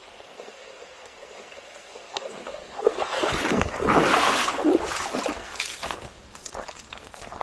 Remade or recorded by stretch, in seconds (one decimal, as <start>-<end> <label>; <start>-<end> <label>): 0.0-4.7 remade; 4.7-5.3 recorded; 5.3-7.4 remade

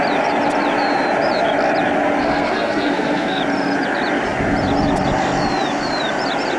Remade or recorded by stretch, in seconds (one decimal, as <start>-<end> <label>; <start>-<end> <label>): 0.0-2.2 recorded; 2.2-3.4 remade; 3.4-6.6 recorded

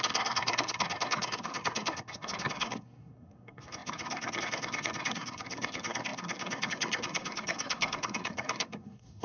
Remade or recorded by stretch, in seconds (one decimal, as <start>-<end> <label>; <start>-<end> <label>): 0.0-9.2 remade

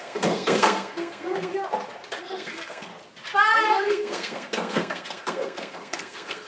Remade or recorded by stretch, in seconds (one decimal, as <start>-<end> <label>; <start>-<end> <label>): 0.0-1.5 remade; 1.5-2.2 recorded; 2.2-2.9 remade; 2.9-3.6 recorded; 3.6-6.5 remade

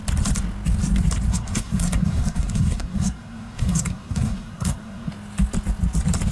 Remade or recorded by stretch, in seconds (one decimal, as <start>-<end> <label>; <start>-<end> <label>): 0.0-1.3 recorded; 1.3-5.1 remade; 5.1-6.3 recorded

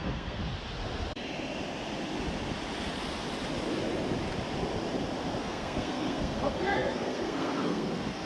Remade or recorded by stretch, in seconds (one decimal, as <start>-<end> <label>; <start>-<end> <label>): 0.0-0.4 remade; 0.4-5.4 recorded; 5.4-8.3 remade